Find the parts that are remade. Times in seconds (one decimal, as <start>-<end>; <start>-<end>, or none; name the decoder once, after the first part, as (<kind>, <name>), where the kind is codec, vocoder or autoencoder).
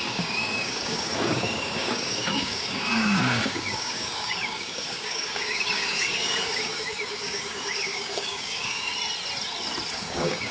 0.0-8.9 (codec, DAC); 9.9-10.5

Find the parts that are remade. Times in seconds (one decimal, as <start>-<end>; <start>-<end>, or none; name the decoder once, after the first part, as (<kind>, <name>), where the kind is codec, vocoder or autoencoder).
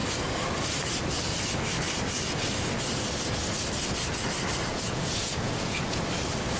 4.7-6.0 (vocoder, Vocos)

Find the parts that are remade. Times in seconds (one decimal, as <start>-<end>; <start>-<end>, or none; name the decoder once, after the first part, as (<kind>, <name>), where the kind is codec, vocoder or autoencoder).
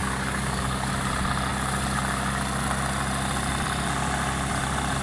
0.0-0.9 (codec, DAC)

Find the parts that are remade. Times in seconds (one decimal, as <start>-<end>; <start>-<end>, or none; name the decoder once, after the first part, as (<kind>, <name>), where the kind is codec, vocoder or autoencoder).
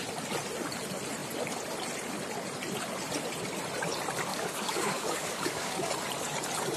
4.3-5.9 (codec, DAC)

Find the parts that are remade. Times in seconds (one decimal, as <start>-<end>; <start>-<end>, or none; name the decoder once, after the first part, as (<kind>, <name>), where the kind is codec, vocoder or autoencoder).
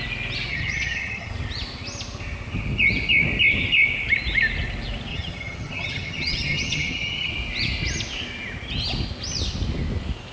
0.5-1.3 (vocoder, HiFi-GAN); 5.1-7.3